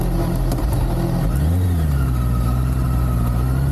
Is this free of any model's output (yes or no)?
yes